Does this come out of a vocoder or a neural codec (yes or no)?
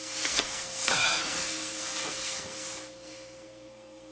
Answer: yes